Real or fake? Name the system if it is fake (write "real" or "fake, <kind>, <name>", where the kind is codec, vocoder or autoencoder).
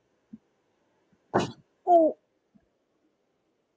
real